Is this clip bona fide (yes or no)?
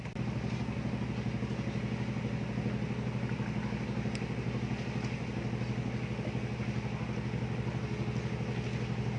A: yes